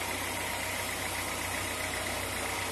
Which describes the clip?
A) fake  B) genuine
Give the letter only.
B